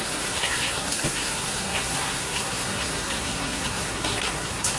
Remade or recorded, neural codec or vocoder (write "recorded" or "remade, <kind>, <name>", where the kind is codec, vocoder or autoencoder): remade, codec, SNAC